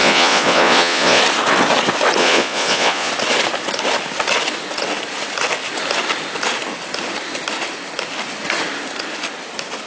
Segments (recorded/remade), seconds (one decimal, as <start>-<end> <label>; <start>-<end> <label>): 0.0-1.2 remade; 1.2-2.2 recorded; 2.2-3.1 remade; 3.1-9.9 recorded